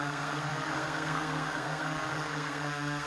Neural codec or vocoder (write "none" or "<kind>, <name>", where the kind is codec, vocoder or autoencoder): codec, SNAC